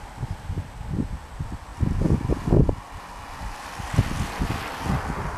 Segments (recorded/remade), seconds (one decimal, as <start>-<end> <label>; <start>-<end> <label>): 0.0-5.4 recorded